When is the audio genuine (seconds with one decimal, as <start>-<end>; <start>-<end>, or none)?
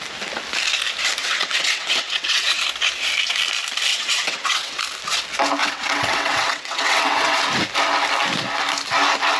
0.0-1.2; 2.6-3.9; 4.8-5.6; 7.4-9.4